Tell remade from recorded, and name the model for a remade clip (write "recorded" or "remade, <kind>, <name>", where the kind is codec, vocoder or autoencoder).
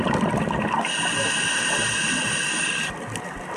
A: recorded